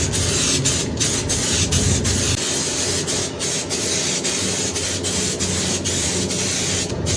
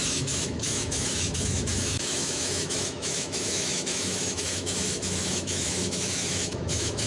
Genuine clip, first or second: first